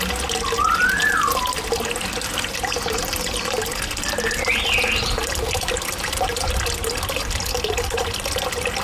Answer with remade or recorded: recorded